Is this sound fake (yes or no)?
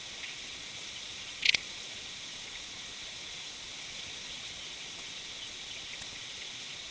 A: yes